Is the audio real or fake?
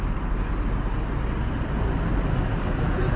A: real